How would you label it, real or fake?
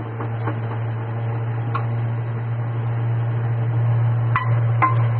real